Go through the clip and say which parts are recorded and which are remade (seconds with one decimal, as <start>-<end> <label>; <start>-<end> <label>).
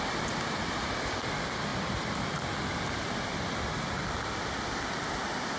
0.0-5.6 recorded